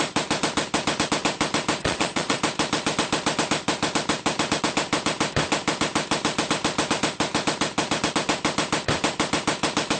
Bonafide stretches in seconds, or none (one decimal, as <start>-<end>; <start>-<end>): 0.0-1.8; 2.4-10.0